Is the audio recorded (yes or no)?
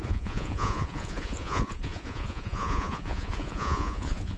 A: no